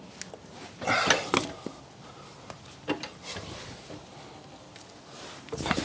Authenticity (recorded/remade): recorded